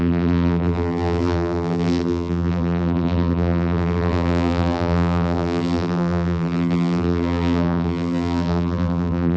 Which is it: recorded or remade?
remade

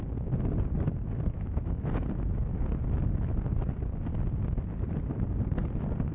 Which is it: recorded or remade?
recorded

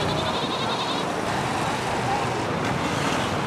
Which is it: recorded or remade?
recorded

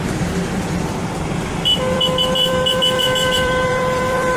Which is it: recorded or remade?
remade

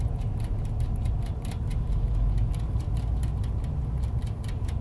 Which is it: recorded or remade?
recorded